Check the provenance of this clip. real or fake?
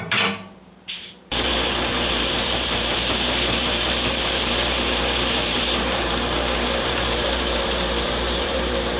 fake